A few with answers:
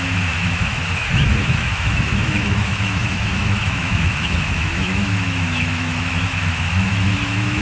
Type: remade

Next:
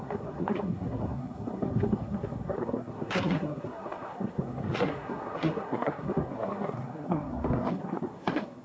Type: remade